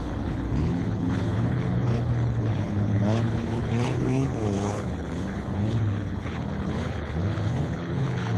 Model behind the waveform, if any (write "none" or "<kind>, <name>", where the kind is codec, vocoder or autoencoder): codec, HILCodec